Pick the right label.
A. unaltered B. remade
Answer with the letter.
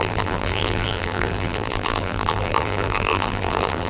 B